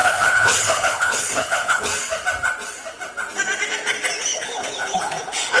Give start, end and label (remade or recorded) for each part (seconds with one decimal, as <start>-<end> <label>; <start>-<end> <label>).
0.0-1.9 remade; 1.9-4.2 recorded; 4.2-5.6 remade